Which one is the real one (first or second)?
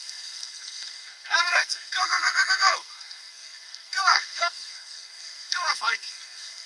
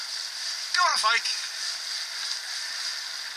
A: second